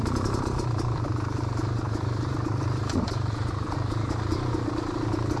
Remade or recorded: remade